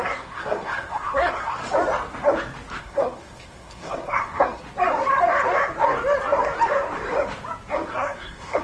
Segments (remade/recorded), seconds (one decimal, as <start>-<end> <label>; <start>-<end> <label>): 0.0-1.6 remade; 1.6-2.8 recorded; 2.8-4.6 remade; 4.6-7.9 recorded; 7.9-8.6 remade